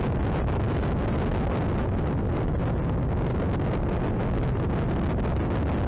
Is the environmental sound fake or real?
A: real